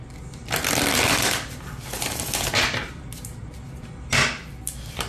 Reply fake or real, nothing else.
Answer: real